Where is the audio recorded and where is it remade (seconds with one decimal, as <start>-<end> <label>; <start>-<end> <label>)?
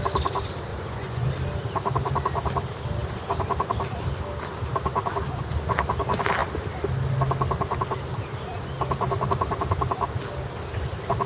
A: 0.0-0.7 recorded; 0.7-1.3 remade; 1.3-11.3 recorded